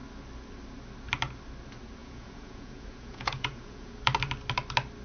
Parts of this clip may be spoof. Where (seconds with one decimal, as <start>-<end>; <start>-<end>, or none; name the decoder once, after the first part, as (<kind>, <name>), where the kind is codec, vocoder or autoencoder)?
2.0-4.0 (vocoder, Vocos)